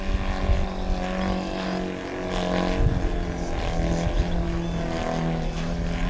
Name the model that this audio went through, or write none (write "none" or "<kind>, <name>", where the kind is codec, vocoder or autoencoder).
none